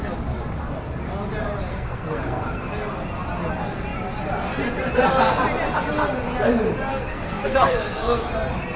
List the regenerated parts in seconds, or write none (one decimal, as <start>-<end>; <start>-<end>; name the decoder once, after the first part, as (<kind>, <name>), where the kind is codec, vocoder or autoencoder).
1.7-2.7 (codec, SNAC); 6.9-8.3